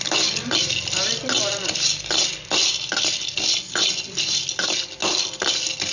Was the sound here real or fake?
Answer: real